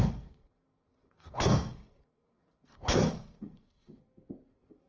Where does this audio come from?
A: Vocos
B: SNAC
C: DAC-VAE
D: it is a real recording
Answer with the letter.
B